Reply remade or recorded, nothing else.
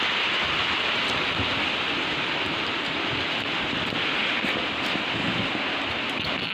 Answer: recorded